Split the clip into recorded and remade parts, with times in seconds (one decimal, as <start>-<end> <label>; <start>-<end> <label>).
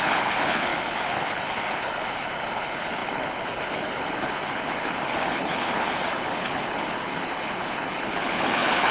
0.0-8.9 remade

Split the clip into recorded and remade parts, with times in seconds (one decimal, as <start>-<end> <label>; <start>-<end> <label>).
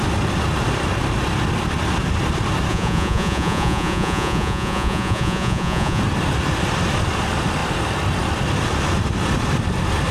0.0-2.7 recorded; 2.7-6.0 remade; 6.0-10.1 recorded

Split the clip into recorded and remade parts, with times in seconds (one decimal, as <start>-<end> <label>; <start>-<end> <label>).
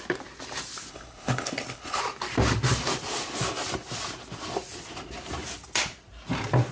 0.0-0.9 recorded; 0.9-2.0 remade; 2.0-6.7 recorded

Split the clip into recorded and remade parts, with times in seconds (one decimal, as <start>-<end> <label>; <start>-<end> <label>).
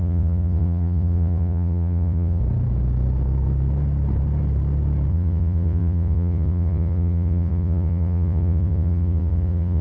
0.0-2.4 remade; 2.4-5.1 recorded; 5.1-9.8 remade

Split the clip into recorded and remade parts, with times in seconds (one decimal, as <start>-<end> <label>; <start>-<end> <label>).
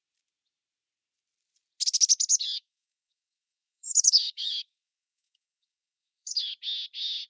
0.0-2.3 recorded; 2.3-6.5 remade; 6.5-7.3 recorded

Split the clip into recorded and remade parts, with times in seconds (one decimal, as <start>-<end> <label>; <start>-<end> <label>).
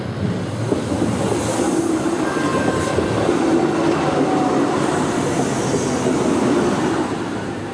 0.0-7.7 recorded